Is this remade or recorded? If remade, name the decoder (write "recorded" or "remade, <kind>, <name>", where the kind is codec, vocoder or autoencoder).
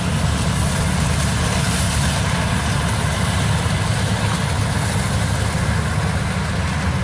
recorded